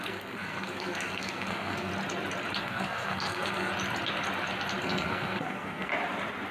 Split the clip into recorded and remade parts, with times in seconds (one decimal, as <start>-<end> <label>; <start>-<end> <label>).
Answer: 0.0-1.9 remade; 1.9-2.6 recorded; 2.6-3.7 remade; 3.7-4.8 recorded; 4.8-5.9 remade; 5.9-6.5 recorded